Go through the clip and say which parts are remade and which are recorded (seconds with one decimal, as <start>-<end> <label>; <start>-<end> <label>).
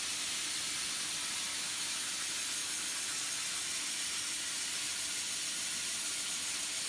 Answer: 0.0-1.5 recorded; 1.5-2.1 remade; 2.1-6.9 recorded